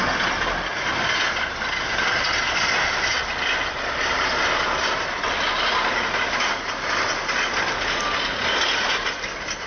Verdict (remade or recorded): recorded